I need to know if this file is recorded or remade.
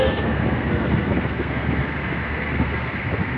remade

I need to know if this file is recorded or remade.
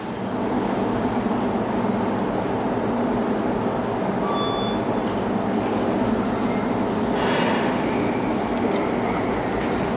recorded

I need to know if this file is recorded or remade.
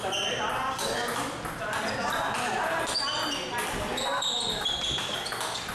recorded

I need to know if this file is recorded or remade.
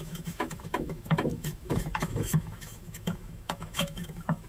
remade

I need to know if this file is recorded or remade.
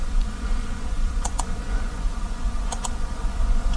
remade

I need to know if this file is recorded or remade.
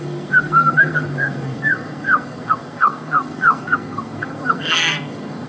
remade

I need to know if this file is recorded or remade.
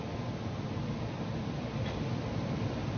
recorded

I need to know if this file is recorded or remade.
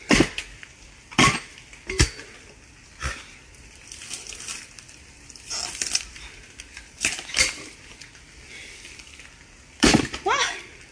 recorded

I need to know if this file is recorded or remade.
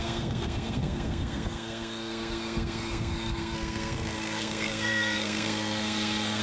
remade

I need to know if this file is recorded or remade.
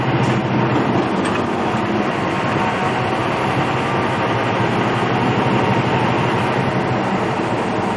recorded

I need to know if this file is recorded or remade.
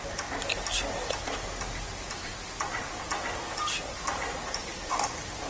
recorded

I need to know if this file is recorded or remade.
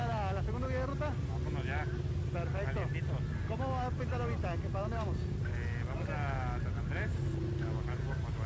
recorded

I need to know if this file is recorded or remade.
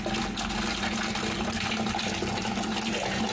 recorded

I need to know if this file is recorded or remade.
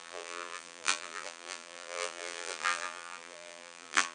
remade